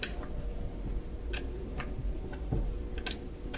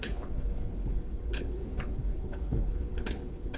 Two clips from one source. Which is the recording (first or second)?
first